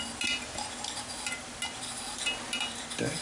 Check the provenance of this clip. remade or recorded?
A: recorded